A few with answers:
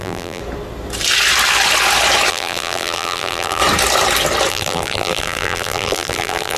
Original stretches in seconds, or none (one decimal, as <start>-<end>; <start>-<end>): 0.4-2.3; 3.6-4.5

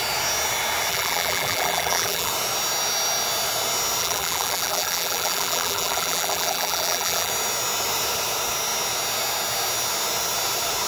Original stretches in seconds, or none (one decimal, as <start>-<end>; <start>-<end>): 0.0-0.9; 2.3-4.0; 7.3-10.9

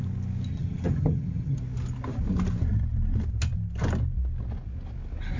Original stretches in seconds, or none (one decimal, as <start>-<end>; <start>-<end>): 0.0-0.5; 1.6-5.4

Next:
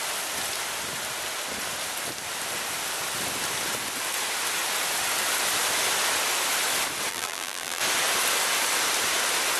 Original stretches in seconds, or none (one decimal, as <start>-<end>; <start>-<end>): 0.0-7.1; 7.8-9.6

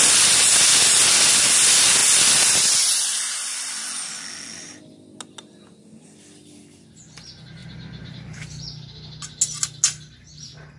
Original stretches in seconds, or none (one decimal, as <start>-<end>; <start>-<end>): 0.0-10.8

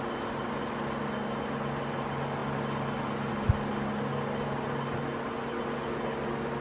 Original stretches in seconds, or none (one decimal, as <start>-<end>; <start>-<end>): 0.0-6.6

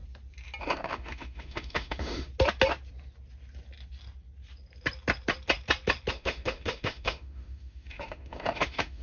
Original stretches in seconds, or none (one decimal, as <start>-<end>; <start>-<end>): 0.0-0.6; 2.3-6.1